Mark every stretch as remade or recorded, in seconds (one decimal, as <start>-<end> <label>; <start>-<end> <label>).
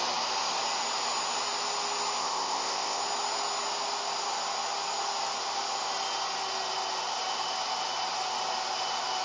0.0-2.2 recorded; 2.2-3.0 remade; 3.0-9.2 recorded